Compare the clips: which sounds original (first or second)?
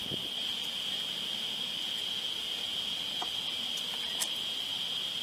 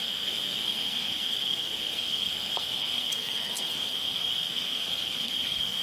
first